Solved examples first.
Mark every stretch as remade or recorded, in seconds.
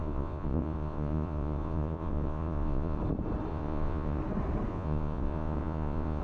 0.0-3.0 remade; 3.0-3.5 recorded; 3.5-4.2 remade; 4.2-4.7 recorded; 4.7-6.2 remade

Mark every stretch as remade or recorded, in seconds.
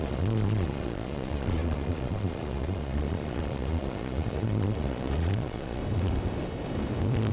0.0-5.8 remade; 5.8-7.3 recorded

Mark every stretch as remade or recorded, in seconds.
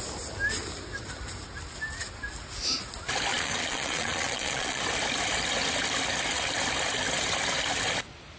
0.0-3.3 recorded; 3.3-4.8 remade; 4.8-8.4 recorded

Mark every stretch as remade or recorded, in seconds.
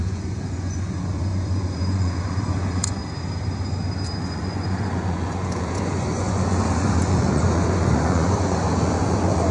0.0-3.0 remade; 3.0-4.2 recorded; 4.2-9.5 remade